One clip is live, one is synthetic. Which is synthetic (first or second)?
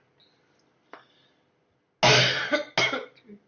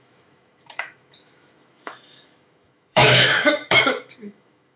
second